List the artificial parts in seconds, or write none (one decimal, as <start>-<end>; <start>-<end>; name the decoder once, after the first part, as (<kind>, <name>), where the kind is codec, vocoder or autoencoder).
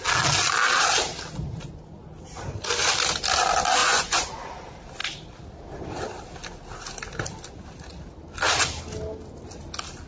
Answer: 3.8-4.5 (vocoder, Vocos)